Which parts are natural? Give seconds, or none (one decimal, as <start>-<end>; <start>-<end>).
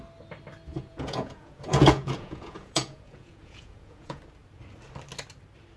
0.0-0.7; 4.2-5.8